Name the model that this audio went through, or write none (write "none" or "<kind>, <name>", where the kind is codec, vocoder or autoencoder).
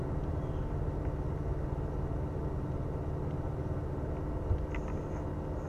none